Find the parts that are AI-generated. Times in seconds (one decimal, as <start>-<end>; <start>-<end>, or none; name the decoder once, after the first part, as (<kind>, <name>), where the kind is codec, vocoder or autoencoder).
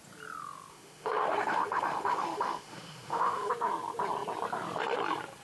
0.7-3.5 (autoencoder, DAC-VAE)